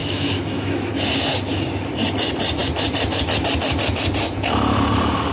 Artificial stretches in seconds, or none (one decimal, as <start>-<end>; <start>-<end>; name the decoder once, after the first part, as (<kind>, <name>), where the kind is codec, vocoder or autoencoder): 0.0-0.9 (autoencoder, DAC-VAE)